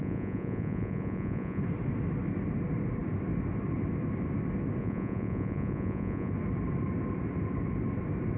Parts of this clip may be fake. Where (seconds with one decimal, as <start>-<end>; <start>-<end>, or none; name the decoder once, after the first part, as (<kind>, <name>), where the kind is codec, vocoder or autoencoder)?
0.0-1.6 (vocoder, Vocos); 4.8-6.3